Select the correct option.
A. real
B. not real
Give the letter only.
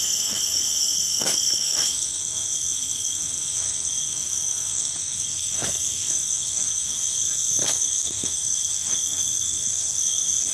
B